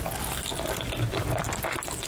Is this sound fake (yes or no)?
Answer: no